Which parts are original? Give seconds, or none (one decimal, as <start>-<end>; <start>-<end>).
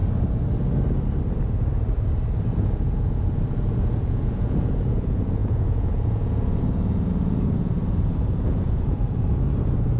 0.0-2.5